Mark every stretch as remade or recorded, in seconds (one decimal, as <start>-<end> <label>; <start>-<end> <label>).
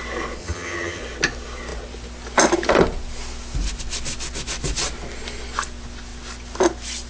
0.0-0.4 recorded; 0.4-1.0 remade; 1.0-7.1 recorded